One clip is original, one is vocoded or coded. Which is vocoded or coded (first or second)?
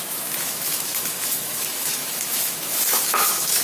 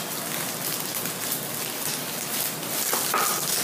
first